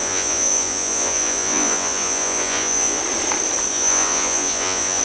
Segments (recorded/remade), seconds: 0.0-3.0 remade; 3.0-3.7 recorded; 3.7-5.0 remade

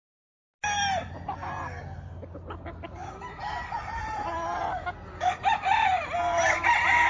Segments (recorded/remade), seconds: 0.0-7.1 recorded

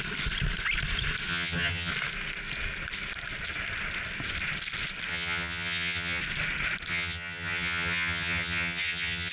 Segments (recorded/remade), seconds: 0.0-1.3 recorded; 1.3-1.9 remade; 1.9-5.1 recorded; 5.1-6.2 remade; 6.2-6.9 recorded; 6.9-9.3 remade

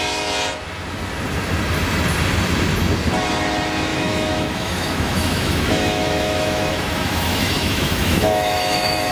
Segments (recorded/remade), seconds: 0.0-3.9 recorded; 3.9-9.1 remade

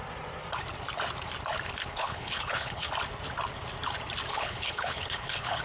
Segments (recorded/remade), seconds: 0.0-1.8 recorded; 1.8-2.9 remade; 2.9-4.3 recorded; 4.3-5.6 remade

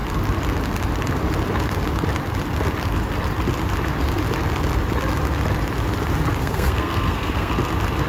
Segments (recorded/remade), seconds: 0.0-6.4 recorded; 6.4-7.5 remade; 7.5-8.1 recorded